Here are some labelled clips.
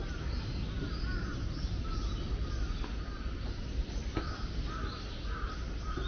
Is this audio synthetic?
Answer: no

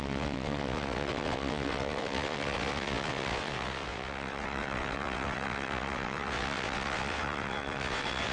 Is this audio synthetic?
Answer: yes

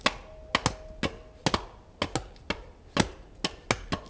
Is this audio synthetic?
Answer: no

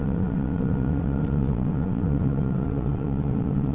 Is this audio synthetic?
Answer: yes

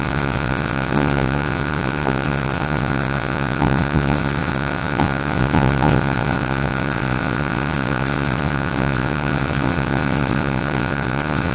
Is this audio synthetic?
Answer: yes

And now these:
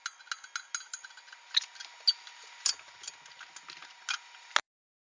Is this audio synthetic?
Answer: no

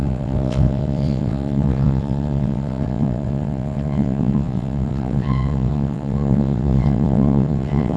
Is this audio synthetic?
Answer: yes